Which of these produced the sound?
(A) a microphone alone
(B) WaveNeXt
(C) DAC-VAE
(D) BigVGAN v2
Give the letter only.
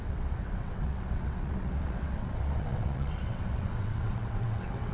B